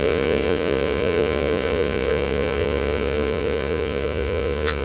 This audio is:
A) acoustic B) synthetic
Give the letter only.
B